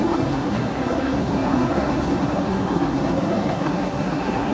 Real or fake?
fake